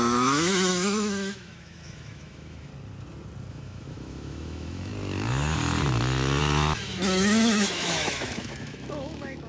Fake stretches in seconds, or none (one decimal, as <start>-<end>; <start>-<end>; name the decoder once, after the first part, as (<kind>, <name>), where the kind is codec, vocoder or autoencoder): 0.0-2.7 (autoencoder, DAC-VAE); 3.5-4.9; 6.4-9.5